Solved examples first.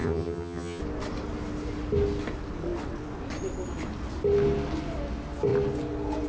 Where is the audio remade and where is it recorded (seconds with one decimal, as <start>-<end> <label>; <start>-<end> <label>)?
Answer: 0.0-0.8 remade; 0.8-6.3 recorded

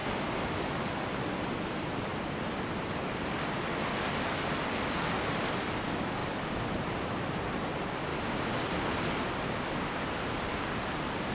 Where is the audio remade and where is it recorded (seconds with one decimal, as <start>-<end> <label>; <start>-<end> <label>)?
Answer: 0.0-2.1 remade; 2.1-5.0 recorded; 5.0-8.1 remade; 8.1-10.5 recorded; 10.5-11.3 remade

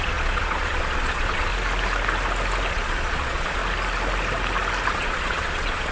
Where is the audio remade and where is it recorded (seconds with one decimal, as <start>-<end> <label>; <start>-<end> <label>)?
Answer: 0.0-1.5 remade; 1.5-2.7 recorded; 2.7-3.6 remade; 3.6-4.9 recorded; 4.9-5.9 remade

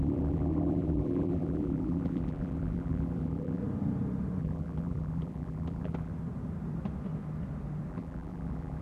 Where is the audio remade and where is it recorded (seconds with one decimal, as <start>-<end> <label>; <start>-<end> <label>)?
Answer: 0.0-3.6 remade; 3.6-4.4 recorded; 4.4-6.1 remade; 6.1-7.9 recorded; 7.9-8.8 remade

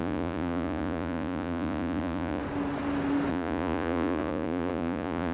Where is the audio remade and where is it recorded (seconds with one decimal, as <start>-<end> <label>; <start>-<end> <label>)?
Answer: 0.0-2.4 remade; 2.4-3.3 recorded; 3.3-5.3 remade